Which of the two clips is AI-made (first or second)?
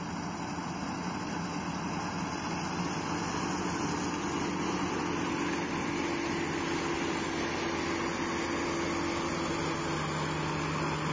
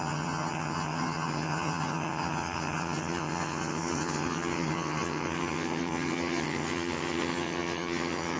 second